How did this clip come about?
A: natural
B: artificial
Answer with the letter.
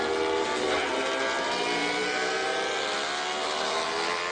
A